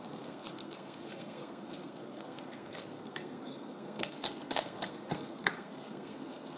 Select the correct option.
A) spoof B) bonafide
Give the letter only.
A